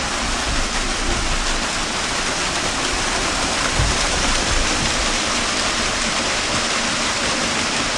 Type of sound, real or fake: fake